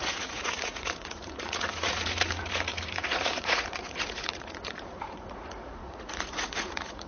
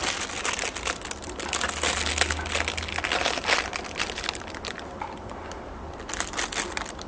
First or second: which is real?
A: second